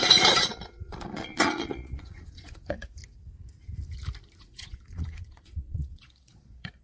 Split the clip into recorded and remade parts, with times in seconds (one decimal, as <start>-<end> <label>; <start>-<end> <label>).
0.0-3.0 remade; 3.0-4.4 recorded; 4.4-6.8 remade